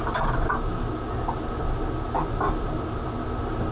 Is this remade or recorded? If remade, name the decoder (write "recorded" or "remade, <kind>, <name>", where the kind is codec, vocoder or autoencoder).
recorded